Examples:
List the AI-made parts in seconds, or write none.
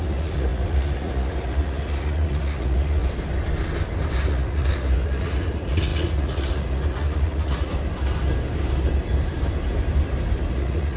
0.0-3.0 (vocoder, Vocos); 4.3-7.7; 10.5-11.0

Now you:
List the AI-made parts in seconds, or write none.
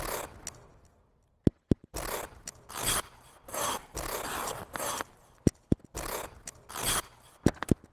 none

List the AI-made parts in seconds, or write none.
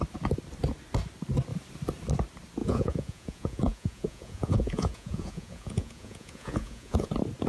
2.6-7.1 (vocoder, Vocos)